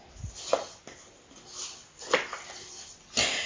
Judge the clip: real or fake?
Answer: real